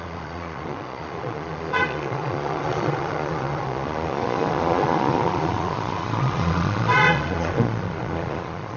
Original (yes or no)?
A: no